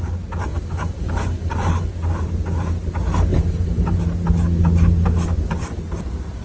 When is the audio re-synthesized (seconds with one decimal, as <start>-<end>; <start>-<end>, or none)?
0.5-1.9; 3.3-4.0